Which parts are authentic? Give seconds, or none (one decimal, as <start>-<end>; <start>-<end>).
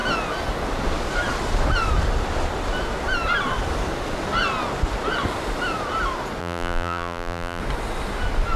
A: 0.0-6.4; 7.6-8.6